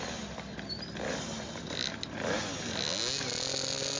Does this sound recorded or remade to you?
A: recorded